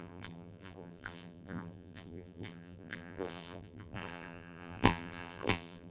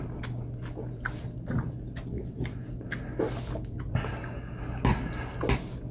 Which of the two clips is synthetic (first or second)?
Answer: first